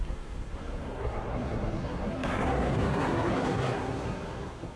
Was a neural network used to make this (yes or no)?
yes